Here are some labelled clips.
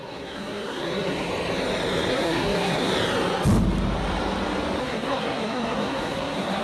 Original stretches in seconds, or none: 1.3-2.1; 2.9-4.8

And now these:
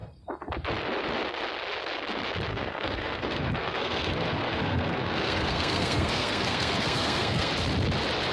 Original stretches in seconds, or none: 0.0-2.5; 7.5-8.3

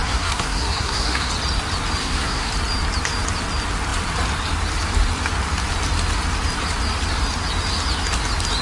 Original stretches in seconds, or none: 1.3-2.0; 2.5-8.6